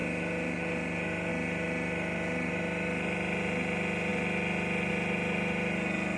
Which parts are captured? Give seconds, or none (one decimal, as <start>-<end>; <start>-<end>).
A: 0.0-6.2